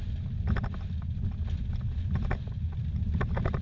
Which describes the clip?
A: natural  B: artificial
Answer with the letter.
A